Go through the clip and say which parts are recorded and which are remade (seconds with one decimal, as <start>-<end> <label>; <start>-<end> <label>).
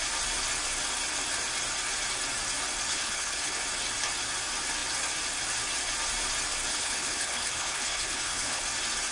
0.0-2.9 recorded; 2.9-3.6 remade; 3.6-6.7 recorded; 6.7-8.6 remade; 8.6-9.1 recorded